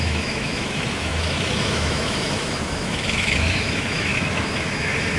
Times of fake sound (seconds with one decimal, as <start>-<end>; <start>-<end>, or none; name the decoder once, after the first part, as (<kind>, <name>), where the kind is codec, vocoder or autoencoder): 0.0-5.2 (autoencoder, DAC-VAE)